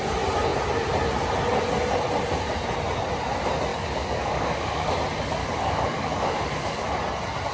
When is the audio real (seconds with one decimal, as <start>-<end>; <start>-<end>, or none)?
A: 0.0-3.7; 4.9-5.4; 6.9-7.5